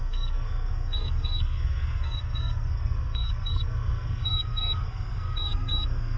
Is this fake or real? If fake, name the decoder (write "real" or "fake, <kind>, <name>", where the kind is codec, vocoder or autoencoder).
fake, codec, SNAC